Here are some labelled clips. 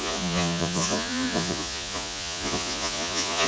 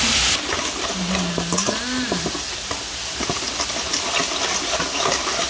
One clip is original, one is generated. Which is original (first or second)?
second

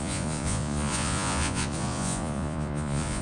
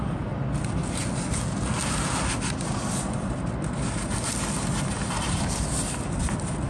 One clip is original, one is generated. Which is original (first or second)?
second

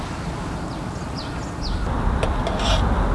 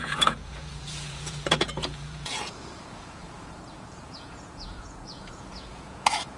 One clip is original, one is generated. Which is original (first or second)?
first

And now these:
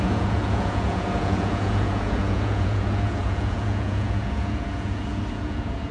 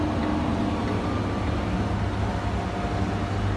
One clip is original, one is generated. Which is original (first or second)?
second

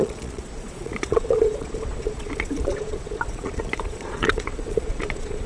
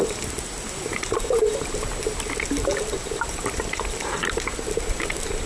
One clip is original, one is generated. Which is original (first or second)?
second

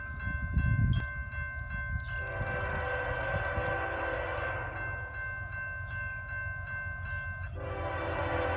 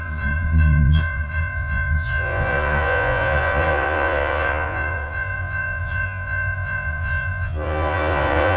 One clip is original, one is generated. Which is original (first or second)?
first